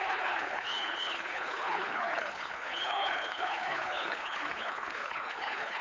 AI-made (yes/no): yes